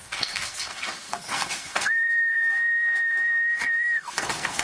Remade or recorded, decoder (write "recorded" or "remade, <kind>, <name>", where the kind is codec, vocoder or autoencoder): remade, codec, SNAC